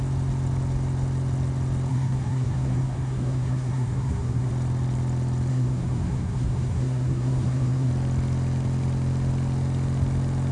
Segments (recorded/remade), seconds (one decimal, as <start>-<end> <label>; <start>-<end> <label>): 0.0-1.9 recorded; 1.9-4.5 remade; 4.5-5.5 recorded; 5.5-7.9 remade; 7.9-10.5 recorded